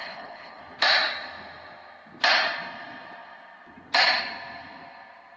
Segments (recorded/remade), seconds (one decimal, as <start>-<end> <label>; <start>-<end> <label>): 0.0-0.6 remade; 0.6-5.4 recorded